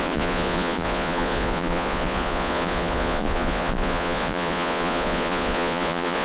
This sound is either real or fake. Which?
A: fake